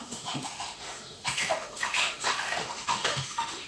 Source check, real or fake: fake